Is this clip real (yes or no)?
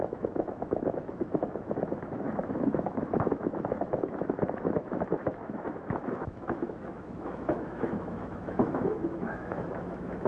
no